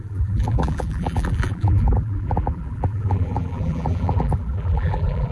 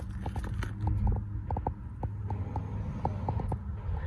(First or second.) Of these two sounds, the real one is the second